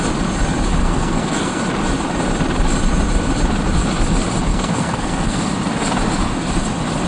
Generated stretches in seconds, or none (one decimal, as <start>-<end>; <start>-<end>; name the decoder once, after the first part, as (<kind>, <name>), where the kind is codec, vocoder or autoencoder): 0.8-1.6 (codec, SNAC); 4.5-5.4